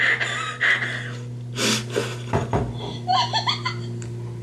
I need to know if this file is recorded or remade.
recorded